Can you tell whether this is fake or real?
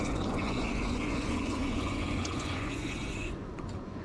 fake